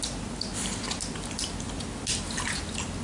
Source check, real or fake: real